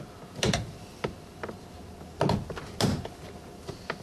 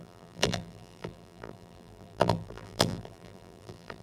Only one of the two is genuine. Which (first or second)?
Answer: first